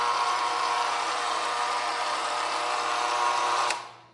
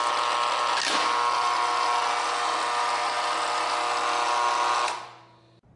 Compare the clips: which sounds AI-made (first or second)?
first